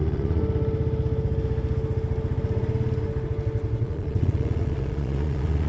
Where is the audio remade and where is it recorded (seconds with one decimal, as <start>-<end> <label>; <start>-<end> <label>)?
0.0-0.4 remade; 0.4-3.8 recorded; 3.8-5.7 remade